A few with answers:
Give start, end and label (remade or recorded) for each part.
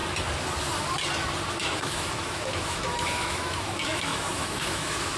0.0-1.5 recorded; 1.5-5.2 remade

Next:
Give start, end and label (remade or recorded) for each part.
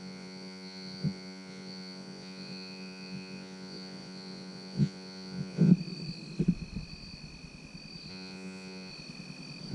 0.0-5.7 remade; 5.7-8.1 recorded; 8.1-8.9 remade; 8.9-9.7 recorded